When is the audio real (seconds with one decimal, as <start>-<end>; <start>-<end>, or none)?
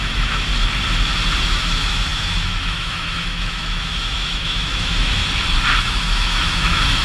0.5-1.4; 5.2-5.8